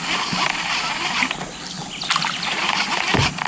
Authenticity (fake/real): real